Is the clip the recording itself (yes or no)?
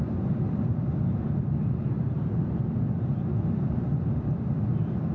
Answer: yes